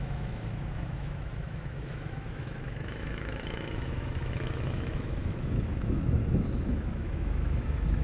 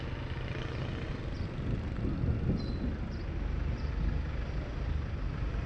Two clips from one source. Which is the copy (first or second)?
first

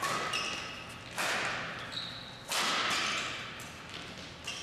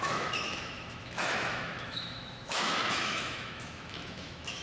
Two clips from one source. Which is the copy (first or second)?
second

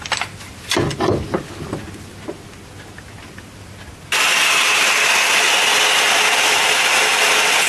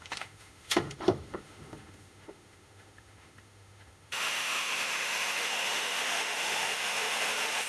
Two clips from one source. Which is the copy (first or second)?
second